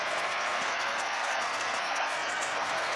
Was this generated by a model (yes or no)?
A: yes